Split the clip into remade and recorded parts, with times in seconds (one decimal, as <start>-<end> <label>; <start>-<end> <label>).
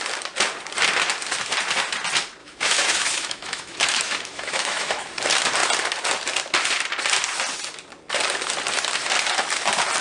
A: 0.0-2.4 recorded; 2.4-5.0 remade; 5.0-10.0 recorded